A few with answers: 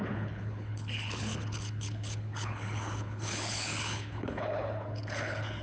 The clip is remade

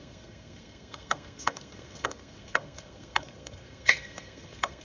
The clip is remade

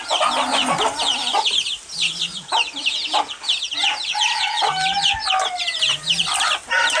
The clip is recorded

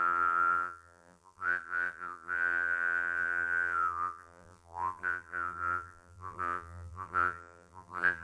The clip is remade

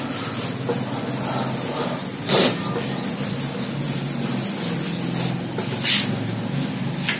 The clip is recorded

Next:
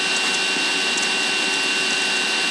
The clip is recorded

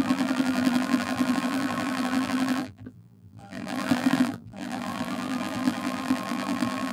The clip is remade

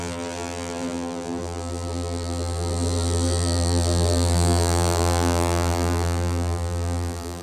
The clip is remade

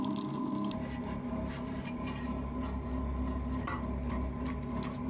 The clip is recorded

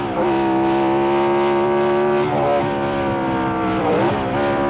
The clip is remade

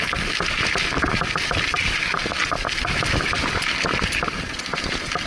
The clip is recorded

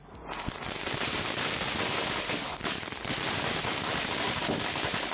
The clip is remade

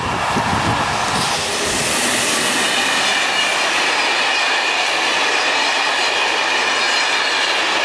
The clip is recorded